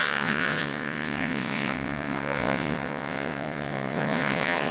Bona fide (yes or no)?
no